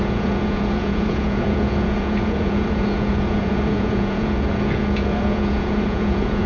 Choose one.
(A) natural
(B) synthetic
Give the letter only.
B